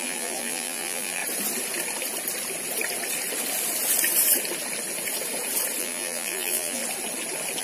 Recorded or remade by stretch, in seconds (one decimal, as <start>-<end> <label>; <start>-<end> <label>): 0.0-1.2 remade; 1.2-5.8 recorded; 5.8-6.8 remade; 6.8-7.6 recorded

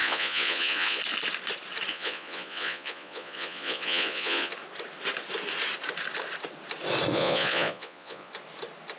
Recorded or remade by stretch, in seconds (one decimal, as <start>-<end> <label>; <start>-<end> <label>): 0.0-1.0 remade; 1.0-1.9 recorded; 1.9-4.5 remade; 4.5-7.1 recorded; 7.1-8.3 remade; 8.3-9.0 recorded

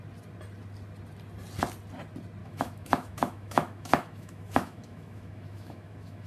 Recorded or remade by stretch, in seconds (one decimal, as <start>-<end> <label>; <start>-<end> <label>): 0.0-2.4 recorded; 2.4-6.3 remade

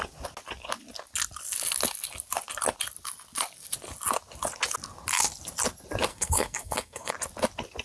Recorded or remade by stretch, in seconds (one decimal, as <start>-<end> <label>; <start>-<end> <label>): 0.0-6.1 recorded; 6.1-7.1 remade; 7.1-7.8 recorded

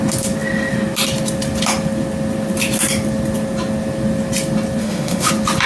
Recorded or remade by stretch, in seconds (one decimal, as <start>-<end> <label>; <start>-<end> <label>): 0.0-4.8 recorded; 4.8-5.3 remade; 5.3-5.7 recorded

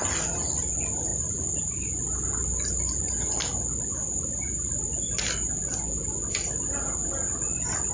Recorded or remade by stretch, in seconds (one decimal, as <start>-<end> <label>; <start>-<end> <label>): 0.0-7.9 recorded

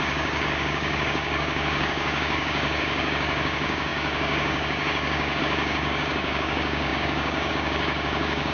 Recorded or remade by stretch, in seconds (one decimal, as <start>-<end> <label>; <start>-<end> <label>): 0.0-8.5 remade

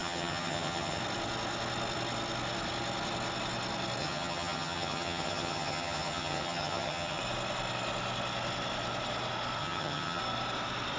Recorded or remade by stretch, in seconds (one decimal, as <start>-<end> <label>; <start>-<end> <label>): 0.0-1.0 remade; 1.0-4.0 recorded; 4.0-7.2 remade; 7.2-9.6 recorded; 9.6-10.2 remade; 10.2-11.0 recorded